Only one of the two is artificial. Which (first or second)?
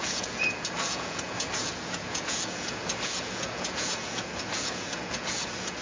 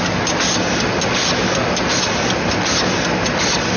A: first